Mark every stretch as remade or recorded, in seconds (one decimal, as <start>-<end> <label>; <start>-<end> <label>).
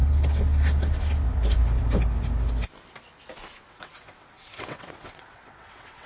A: 0.0-3.7 recorded; 3.7-6.1 remade